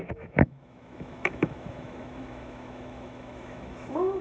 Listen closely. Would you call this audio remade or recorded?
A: remade